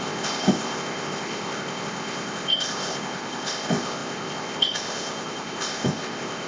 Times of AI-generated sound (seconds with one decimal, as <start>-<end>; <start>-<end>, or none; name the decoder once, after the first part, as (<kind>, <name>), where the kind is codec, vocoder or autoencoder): 0.0-6.5 (codec, ZipCodec)